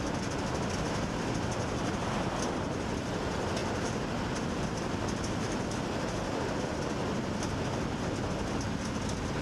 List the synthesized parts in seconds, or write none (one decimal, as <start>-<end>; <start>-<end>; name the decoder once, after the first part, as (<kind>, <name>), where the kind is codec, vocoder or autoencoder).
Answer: none